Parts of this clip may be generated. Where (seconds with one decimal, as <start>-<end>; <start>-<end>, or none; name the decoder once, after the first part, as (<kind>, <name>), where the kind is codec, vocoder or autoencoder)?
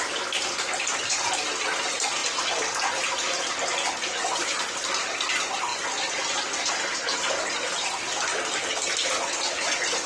none